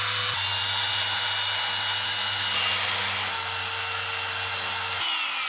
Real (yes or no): yes